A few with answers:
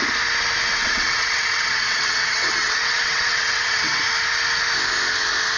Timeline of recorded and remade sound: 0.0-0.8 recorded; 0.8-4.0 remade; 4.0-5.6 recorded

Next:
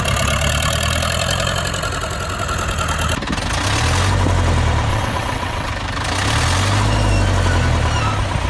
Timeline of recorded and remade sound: 0.0-4.9 recorded; 4.9-5.7 remade; 5.7-8.5 recorded

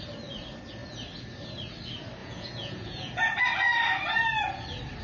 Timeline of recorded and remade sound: 0.0-2.2 recorded; 2.2-3.2 remade; 3.2-5.0 recorded